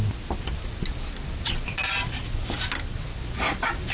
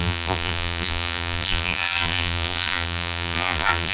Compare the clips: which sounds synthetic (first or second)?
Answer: second